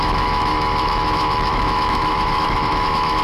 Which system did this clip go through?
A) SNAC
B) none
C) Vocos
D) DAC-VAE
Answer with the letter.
D